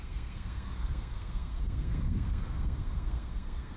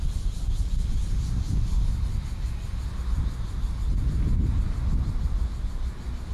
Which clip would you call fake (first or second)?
first